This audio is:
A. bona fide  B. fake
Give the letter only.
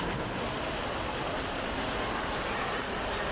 A